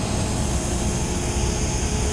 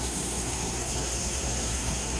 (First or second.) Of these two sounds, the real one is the first